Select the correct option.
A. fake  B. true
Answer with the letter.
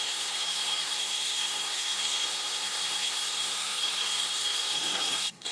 A